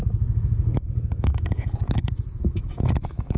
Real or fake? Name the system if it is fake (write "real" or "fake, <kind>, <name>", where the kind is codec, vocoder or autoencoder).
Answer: fake, autoencoder, DAC-VAE